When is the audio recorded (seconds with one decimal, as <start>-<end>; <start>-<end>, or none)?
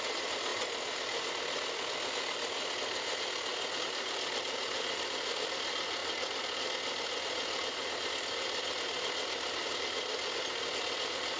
0.0-11.4